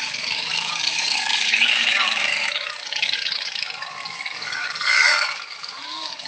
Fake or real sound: fake